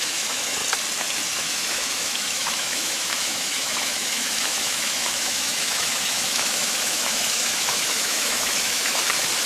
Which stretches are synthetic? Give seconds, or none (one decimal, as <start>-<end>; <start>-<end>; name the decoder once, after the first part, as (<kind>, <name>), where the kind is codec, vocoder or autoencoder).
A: 0.0-0.6 (autoencoder, DAC-VAE); 1.3-9.0